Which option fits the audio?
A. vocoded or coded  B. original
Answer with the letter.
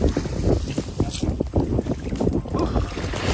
B